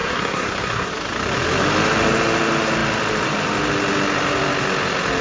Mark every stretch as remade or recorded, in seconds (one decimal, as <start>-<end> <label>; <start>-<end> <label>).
0.0-0.9 remade; 0.9-5.2 recorded